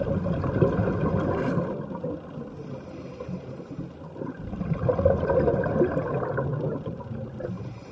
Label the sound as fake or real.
real